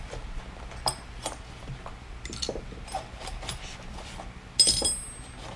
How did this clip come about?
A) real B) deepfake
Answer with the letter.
A